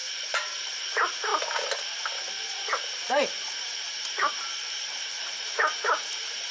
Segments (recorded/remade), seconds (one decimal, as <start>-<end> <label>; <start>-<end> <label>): 0.0-6.5 remade